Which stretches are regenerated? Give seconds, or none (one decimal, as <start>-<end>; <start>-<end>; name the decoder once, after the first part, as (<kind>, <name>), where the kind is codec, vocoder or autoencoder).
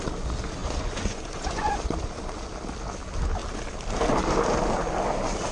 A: 0.6-1.7 (vocoder, Vocos)